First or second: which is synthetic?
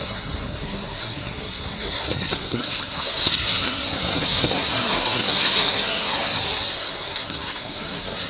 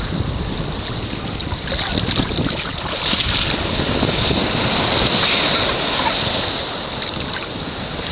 first